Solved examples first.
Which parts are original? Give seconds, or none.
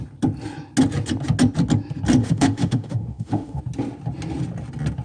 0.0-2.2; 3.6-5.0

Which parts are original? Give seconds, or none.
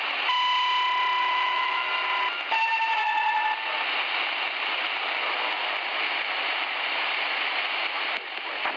0.0-1.2; 1.9-8.8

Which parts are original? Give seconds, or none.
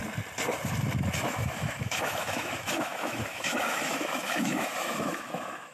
0.0-1.2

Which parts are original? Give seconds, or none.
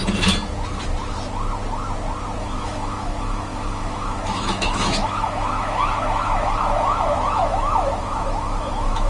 0.0-2.4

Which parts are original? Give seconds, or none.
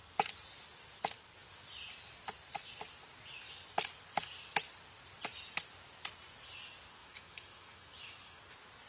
0.0-7.0; 8.4-8.9